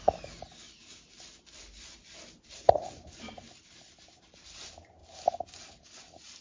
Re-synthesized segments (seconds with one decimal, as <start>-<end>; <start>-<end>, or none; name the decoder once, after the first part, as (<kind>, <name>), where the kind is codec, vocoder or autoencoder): 0.8-4.6 (vocoder, BigVGAN v2); 5.0-6.0